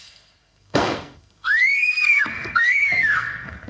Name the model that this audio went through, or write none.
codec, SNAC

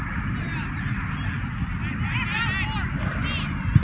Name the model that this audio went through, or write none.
none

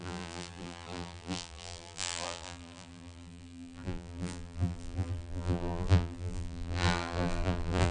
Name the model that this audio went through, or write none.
vocoder, BigVGAN v2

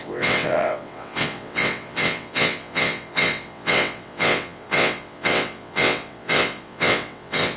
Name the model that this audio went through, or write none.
vocoder, WaveNeXt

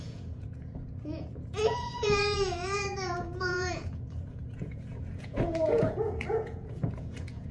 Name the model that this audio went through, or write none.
vocoder, Vocos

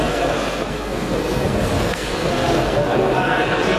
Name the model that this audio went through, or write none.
codec, SNAC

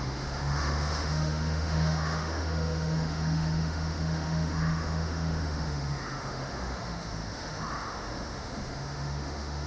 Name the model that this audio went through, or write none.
autoencoder, DAC-VAE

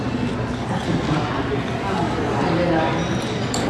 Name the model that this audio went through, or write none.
none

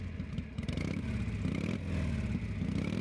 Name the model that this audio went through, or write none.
none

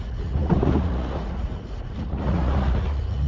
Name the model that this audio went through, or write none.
vocoder, Vocos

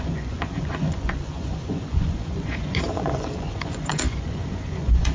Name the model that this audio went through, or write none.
vocoder, Vocos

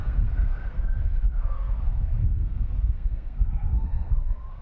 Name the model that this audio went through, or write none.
codec, SNAC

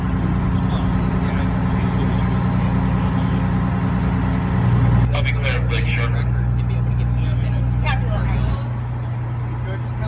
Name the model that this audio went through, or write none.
none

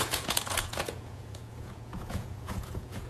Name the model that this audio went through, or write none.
vocoder, Vocos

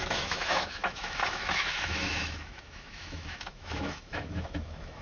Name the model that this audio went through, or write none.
autoencoder, DAC-VAE